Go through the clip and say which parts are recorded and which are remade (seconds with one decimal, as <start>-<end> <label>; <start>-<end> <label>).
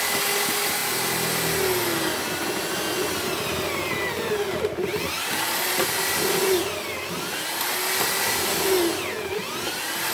0.0-10.1 recorded